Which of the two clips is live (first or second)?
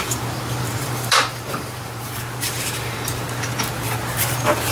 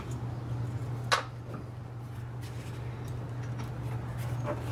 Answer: second